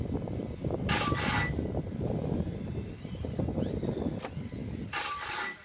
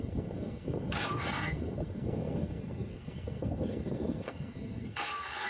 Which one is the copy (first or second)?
second